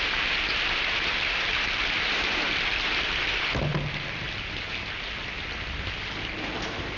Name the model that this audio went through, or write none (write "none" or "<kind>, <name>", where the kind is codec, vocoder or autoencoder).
none